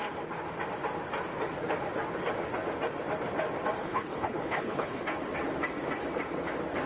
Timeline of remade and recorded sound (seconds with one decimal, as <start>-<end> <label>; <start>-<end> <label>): 0.0-3.8 recorded; 3.8-5.0 remade; 5.0-6.9 recorded

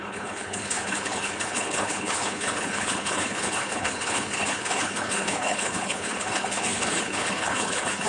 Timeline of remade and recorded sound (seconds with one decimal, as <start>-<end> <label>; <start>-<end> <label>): 0.0-8.1 remade

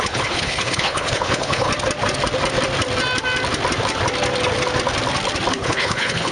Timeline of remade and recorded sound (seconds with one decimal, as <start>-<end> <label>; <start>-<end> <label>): 0.0-1.7 remade; 1.7-5.5 recorded; 5.5-6.3 remade

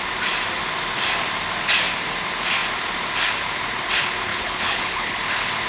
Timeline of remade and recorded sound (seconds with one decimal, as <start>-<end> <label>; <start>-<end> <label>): 0.0-4.3 recorded; 4.3-5.2 remade; 5.2-5.7 recorded

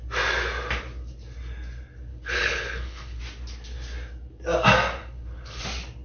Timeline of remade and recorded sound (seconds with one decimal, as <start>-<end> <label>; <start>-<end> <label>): 0.0-2.1 recorded; 2.1-3.2 remade; 3.2-5.0 recorded; 5.0-5.6 remade; 5.6-6.0 recorded

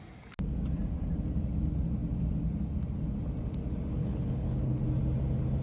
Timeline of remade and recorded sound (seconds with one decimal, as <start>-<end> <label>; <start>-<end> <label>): 0.0-4.0 recorded; 4.0-4.8 remade; 4.8-5.6 recorded

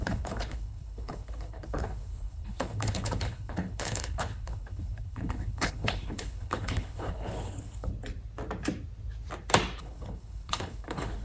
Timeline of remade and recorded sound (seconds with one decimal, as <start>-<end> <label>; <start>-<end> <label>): 0.0-7.9 remade; 7.9-9.8 recorded; 9.8-11.2 remade